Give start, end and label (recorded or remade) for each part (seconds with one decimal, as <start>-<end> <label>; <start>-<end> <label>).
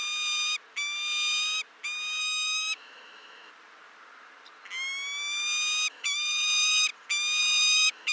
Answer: 0.0-2.2 recorded; 2.2-3.5 remade; 3.5-5.9 recorded; 5.9-6.9 remade; 6.9-7.4 recorded; 7.4-8.1 remade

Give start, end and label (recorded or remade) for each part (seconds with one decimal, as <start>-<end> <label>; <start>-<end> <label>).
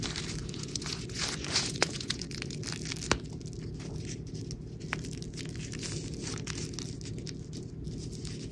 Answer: 0.0-0.4 recorded; 0.4-2.6 remade; 2.6-8.5 recorded